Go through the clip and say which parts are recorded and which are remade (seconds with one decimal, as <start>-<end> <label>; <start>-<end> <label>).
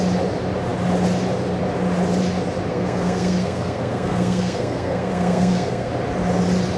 0.0-2.7 recorded; 2.7-5.9 remade; 5.9-6.8 recorded